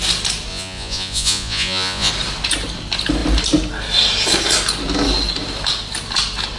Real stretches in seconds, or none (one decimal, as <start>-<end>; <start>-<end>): 0.0-0.5; 2.1-6.6